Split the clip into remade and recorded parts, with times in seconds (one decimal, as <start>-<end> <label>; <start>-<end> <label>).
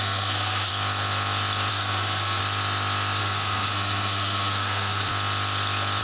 0.0-0.7 remade; 0.7-1.7 recorded; 1.7-2.4 remade; 2.4-3.2 recorded; 3.2-5.1 remade; 5.1-6.0 recorded